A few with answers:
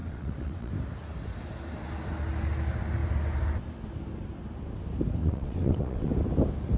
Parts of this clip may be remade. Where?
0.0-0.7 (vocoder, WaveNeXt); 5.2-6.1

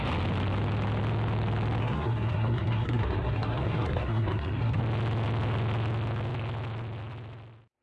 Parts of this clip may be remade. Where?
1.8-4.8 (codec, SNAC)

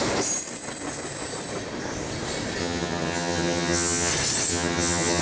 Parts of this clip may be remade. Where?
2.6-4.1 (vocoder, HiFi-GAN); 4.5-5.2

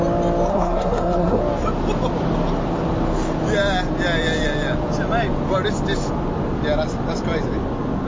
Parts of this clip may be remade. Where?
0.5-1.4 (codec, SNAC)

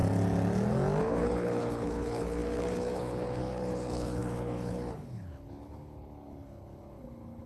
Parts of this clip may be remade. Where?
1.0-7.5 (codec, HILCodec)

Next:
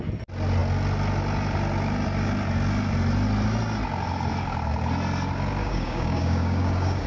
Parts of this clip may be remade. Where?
5.6-7.1 (codec, DAC)